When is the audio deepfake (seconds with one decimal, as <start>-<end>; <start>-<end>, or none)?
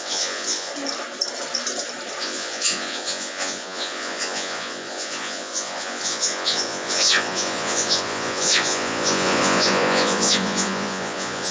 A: 0.0-0.7; 2.2-11.5